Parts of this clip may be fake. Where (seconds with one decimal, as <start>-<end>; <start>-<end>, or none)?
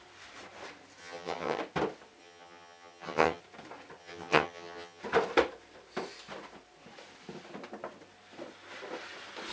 1.0-1.6; 2.2-3.4; 4.0-5.0